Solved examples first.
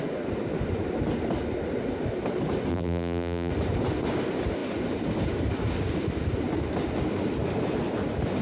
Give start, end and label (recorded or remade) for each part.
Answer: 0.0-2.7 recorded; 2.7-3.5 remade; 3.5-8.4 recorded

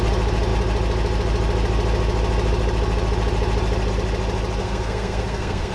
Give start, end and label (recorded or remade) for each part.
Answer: 0.0-4.6 recorded; 4.6-5.7 remade